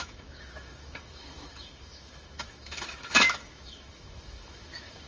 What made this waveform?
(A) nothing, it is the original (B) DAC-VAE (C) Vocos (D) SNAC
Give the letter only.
B